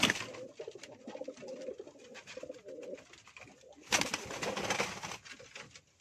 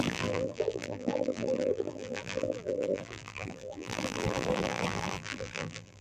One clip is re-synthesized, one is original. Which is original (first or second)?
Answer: first